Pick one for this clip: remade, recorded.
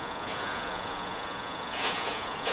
remade